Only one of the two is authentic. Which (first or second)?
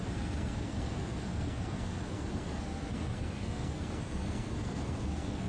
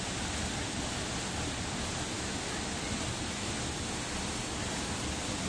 second